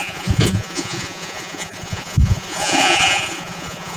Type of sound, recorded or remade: remade